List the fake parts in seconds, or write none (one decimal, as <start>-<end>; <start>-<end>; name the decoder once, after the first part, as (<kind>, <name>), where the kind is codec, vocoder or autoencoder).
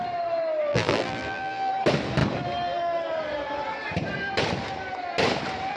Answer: 0.7-1.7 (vocoder, BigVGAN v2)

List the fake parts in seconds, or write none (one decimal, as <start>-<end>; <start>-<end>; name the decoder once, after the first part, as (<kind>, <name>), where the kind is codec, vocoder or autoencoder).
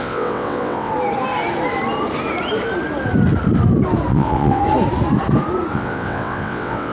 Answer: 0.0-0.9 (vocoder, WaveNeXt); 4.1-4.6; 5.7-6.9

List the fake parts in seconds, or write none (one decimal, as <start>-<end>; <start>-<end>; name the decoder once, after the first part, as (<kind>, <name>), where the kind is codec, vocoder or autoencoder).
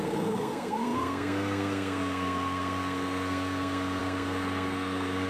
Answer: 0.0-5.3 (codec, SNAC)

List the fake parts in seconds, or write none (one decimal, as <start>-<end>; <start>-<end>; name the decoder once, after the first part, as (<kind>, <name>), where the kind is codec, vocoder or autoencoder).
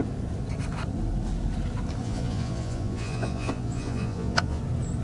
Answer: 2.0-4.6 (vocoder, Vocos)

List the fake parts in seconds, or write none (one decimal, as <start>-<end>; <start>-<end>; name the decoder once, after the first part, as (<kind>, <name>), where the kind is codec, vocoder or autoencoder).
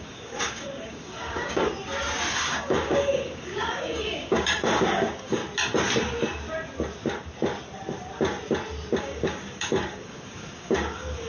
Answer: 0.0-1.7 (codec, DAC); 2.3-5.4; 9.0-11.3